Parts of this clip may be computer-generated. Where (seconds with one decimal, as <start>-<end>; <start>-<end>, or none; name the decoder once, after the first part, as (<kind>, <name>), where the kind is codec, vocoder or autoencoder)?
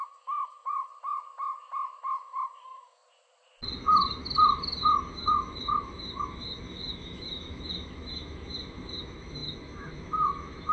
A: 0.0-0.9 (autoencoder, DAC-VAE); 2.0-3.0; 5.1-10.7